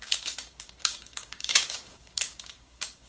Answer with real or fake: fake